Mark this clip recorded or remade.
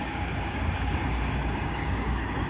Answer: remade